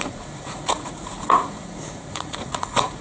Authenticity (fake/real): fake